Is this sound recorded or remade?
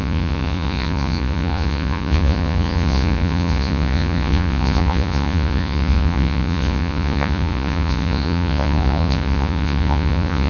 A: remade